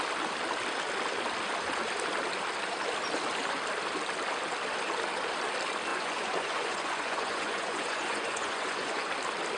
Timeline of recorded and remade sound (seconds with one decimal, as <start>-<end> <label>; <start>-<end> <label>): 0.0-5.9 recorded; 5.9-9.1 remade; 9.1-9.6 recorded